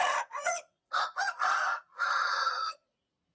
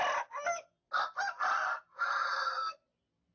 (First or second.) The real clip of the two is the second